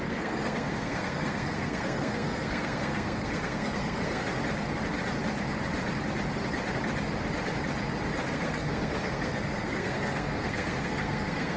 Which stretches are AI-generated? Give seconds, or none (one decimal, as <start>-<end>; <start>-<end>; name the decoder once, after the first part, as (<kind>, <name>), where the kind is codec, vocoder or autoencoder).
0.0-4.2 (codec, SNAC); 8.3-11.6